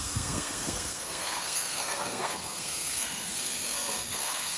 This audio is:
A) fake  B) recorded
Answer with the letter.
A